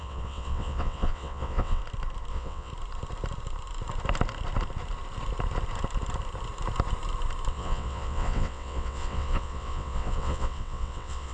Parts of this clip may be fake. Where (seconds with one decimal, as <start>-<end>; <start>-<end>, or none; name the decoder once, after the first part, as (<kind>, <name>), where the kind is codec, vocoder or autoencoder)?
0.0-1.8 (vocoder, WaveNeXt); 2.3-2.7; 7.5-11.3